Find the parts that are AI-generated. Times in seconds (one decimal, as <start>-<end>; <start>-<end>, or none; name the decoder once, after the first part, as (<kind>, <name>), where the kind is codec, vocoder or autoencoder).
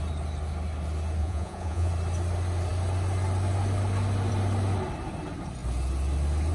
1.2-1.9 (vocoder, Vocos)